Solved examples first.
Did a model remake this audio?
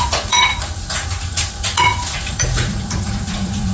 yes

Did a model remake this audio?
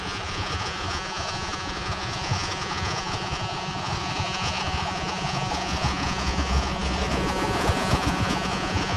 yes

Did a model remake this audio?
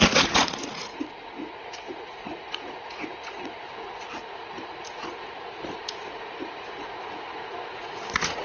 yes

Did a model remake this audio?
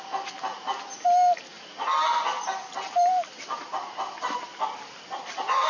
no